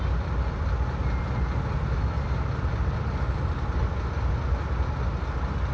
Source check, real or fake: real